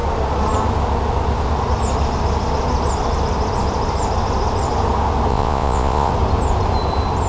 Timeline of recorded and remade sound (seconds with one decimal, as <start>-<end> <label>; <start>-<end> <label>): 0.0-5.3 recorded; 5.3-6.1 remade; 6.1-7.3 recorded